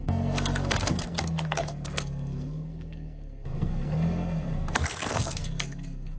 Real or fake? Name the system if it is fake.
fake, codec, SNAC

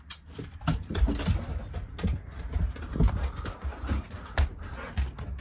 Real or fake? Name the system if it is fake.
real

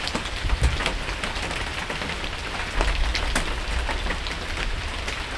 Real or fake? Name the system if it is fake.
real